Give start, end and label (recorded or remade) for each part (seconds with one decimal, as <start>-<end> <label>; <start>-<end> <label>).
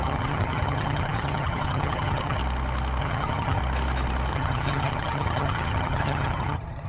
0.0-2.4 remade; 2.4-3.0 recorded; 3.0-3.6 remade; 3.6-4.3 recorded; 4.3-6.9 remade